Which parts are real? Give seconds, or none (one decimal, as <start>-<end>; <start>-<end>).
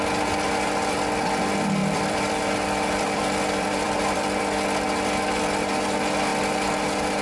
0.0-1.8; 4.4-7.2